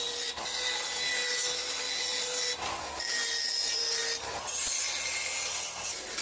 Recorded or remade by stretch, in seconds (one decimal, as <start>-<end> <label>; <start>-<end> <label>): 0.0-4.0 recorded; 4.0-4.5 remade; 4.5-6.2 recorded